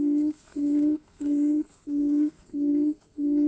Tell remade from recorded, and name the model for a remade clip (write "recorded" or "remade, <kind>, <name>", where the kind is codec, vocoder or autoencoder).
remade, codec, SNAC